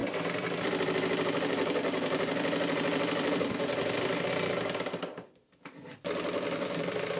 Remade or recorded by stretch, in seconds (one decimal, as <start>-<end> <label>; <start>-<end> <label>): 0.0-4.3 remade; 4.3-7.2 recorded